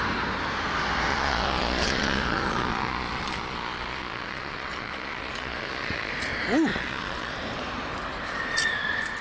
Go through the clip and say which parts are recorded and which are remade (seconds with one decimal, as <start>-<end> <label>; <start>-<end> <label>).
0.0-1.1 recorded; 1.1-6.1 remade; 6.1-6.7 recorded; 6.7-7.3 remade; 7.3-9.2 recorded